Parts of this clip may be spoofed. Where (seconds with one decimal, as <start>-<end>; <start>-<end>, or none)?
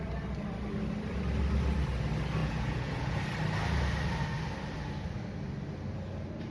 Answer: 2.4-3.2